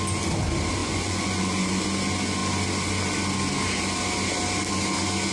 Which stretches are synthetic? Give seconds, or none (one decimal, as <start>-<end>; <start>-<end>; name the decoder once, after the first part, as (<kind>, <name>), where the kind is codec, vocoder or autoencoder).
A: 0.8-1.8 (vocoder, Vocos)